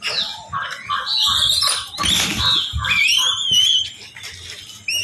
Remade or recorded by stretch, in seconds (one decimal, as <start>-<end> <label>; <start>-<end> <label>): 0.0-5.0 recorded